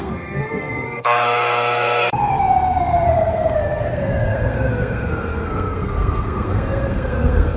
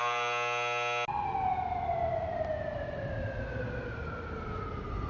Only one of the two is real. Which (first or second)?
second